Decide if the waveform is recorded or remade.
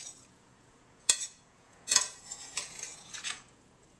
remade